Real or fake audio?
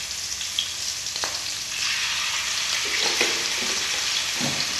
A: real